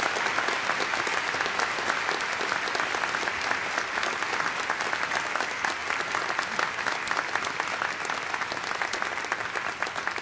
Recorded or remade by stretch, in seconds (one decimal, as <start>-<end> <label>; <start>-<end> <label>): 0.0-10.2 recorded